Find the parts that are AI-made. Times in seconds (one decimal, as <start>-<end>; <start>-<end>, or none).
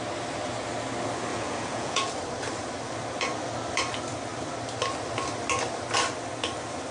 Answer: 1.3-2.1